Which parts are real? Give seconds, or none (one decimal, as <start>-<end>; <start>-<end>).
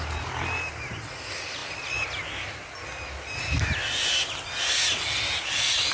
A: 0.0-5.9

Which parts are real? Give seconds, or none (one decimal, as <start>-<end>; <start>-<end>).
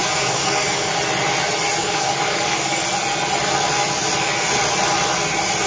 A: 0.9-1.8; 2.8-5.7